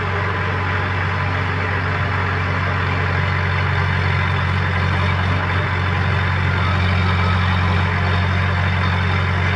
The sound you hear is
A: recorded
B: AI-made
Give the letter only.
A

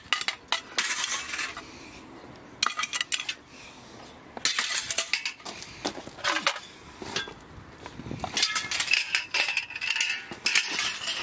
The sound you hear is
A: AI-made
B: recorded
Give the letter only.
B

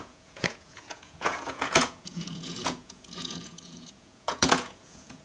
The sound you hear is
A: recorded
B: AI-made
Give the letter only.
B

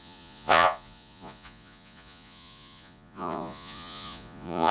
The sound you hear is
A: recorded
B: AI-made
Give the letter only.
B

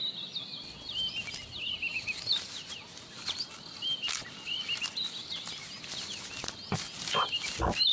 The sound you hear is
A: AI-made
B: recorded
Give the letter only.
B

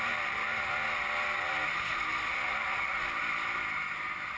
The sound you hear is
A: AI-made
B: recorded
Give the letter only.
B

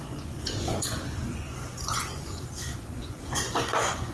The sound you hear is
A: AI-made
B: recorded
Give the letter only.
A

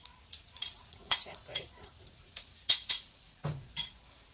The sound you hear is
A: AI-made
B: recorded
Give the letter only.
A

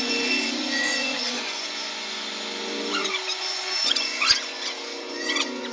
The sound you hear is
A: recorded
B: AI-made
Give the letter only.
B